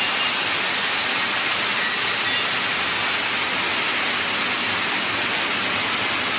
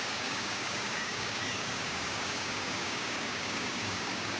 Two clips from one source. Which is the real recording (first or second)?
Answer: first